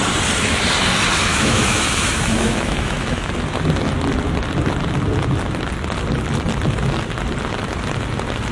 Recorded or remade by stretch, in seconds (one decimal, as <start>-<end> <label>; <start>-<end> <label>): 0.0-1.3 recorded; 1.3-3.3 remade; 3.3-8.5 recorded